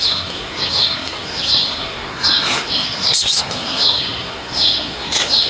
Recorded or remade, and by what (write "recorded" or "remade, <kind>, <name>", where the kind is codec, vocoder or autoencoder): remade, codec, SNAC